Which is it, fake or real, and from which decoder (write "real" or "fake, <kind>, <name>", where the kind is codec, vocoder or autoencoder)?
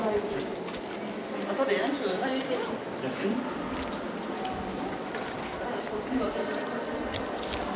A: real